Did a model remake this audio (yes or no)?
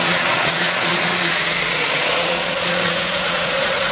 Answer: yes